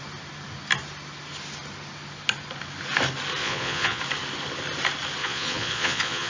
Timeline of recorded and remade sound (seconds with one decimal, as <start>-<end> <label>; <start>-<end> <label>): 0.0-3.4 recorded; 3.4-4.0 remade; 4.0-5.2 recorded; 5.2-6.3 remade